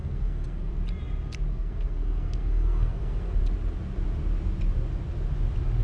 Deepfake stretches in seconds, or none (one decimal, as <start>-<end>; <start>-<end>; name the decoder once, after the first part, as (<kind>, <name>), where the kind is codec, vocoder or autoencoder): 0.0-0.7 (codec, SNAC); 1.5-3.4